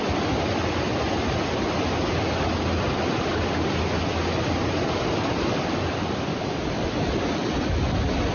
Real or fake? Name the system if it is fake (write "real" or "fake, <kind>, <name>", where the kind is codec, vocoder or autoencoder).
real